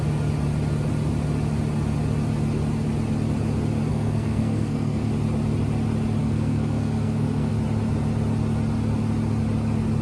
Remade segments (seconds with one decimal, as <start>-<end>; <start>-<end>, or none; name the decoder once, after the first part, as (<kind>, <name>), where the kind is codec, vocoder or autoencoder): 3.9-5.1 (codec, SNAC); 6.2-7.5